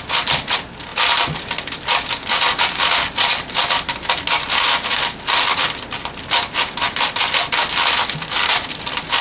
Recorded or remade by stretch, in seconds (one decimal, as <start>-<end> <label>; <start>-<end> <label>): 0.0-9.2 recorded